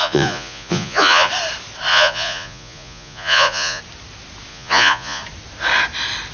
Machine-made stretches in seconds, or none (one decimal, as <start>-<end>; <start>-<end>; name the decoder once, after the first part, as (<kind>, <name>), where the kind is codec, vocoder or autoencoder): 0.0-1.3 (vocoder, Vocos); 1.9-3.8; 4.5-5.2